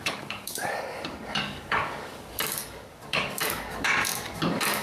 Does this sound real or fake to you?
fake